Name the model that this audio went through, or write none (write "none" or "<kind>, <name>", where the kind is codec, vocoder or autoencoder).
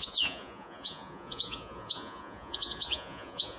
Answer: vocoder, Vocos